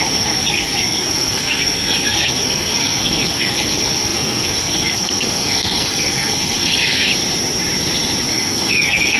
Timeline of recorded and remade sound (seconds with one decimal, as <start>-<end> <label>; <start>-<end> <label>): 0.0-7.1 remade; 7.1-8.3 recorded; 8.3-9.2 remade